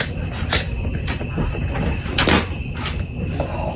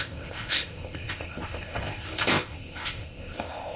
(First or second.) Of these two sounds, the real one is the first